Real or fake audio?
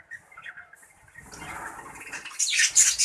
real